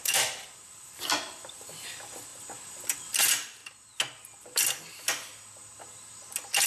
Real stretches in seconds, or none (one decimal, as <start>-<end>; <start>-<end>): 3.6-6.7